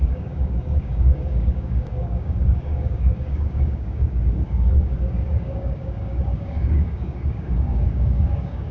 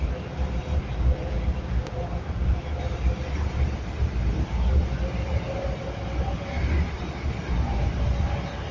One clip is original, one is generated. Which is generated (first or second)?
first